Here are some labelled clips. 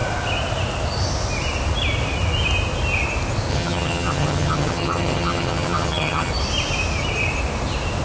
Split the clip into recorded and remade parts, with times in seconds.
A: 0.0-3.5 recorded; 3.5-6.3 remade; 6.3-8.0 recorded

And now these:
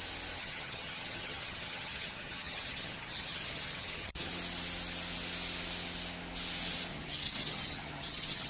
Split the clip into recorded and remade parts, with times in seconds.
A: 0.0-0.4 recorded; 0.4-4.3 remade; 4.3-6.9 recorded; 6.9-8.5 remade

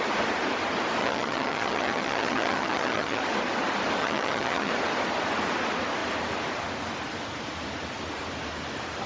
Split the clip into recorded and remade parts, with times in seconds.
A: 0.0-1.0 recorded; 1.0-3.2 remade; 3.2-4.0 recorded; 4.0-4.7 remade; 4.7-9.1 recorded

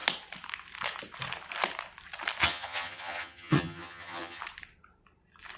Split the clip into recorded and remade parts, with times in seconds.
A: 0.0-2.4 recorded; 2.4-4.4 remade; 4.4-5.6 recorded

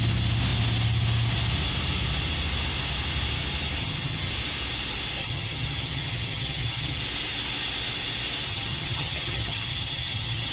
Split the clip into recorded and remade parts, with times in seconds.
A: 0.0-3.8 recorded; 3.8-4.3 remade; 4.3-5.2 recorded; 5.2-7.0 remade; 7.0-8.5 recorded; 8.5-10.5 remade

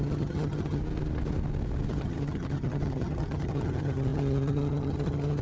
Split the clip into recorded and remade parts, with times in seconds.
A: 0.0-0.8 remade; 0.8-1.9 recorded; 1.9-5.4 remade